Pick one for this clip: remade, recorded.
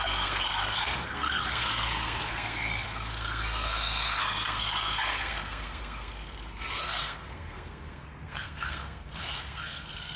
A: remade